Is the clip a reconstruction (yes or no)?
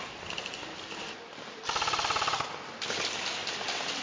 no